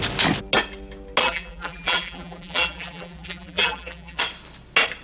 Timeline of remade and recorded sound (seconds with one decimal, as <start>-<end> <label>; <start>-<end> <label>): 0.0-1.2 recorded; 1.2-4.2 remade; 4.2-5.0 recorded